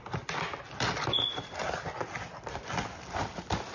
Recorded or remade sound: recorded